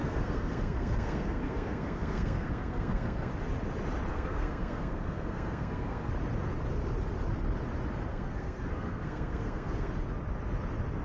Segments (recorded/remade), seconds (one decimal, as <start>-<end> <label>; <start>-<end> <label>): 0.0-3.3 remade; 3.3-4.1 recorded; 4.1-6.1 remade; 6.1-8.1 recorded; 8.1-9.9 remade; 9.9-11.0 recorded